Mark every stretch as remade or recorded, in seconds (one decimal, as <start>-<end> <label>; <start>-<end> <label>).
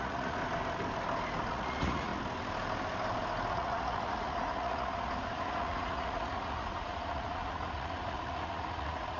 0.0-0.4 remade; 0.4-1.5 recorded; 1.5-2.1 remade; 2.1-3.5 recorded; 3.5-9.2 remade